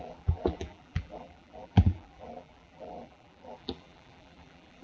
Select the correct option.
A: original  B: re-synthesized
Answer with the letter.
B